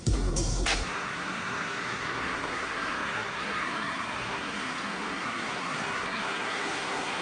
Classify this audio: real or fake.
fake